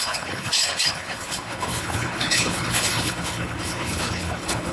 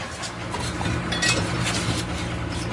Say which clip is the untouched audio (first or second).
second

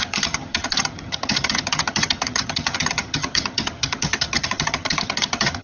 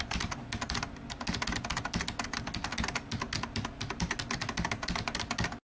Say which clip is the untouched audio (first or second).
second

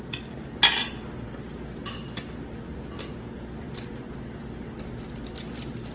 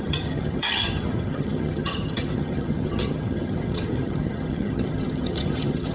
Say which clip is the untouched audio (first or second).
first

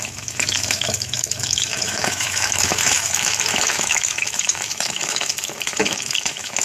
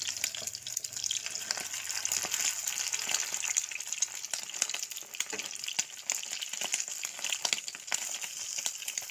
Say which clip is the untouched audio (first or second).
second